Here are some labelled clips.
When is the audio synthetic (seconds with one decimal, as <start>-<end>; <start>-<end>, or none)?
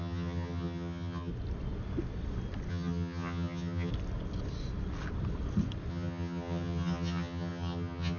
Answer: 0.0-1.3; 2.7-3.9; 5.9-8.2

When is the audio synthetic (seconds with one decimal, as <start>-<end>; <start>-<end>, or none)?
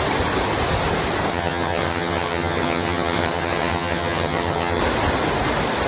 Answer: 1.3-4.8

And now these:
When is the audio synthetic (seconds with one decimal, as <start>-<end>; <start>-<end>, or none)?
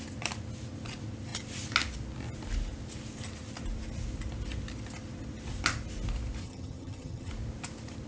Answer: 6.4-7.3